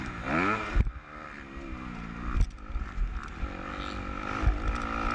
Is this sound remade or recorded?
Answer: recorded